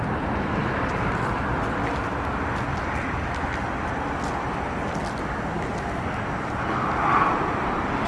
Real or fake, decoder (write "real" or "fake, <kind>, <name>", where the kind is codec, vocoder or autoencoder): real